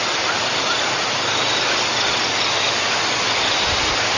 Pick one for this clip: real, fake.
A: real